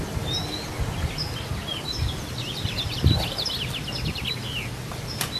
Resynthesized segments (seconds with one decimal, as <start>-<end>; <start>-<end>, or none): 1.7-4.7

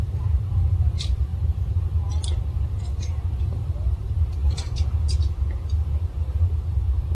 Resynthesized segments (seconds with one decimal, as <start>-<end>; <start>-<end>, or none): 0.0-1.3; 2.7-7.1